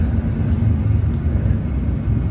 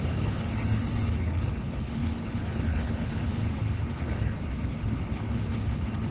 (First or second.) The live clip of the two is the first